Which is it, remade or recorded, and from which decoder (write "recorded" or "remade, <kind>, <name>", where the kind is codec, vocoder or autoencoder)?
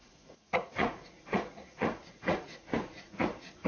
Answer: remade, vocoder, Vocos